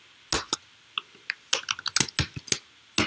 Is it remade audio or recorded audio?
recorded